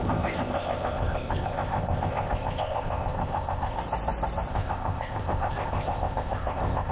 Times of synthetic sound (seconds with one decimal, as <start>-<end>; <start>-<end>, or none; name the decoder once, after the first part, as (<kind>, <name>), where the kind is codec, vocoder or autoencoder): 0.0-3.8 (codec, ZipCodec); 4.5-6.9